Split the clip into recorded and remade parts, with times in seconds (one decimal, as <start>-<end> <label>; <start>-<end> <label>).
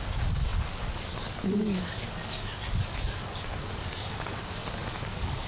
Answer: 0.0-5.5 remade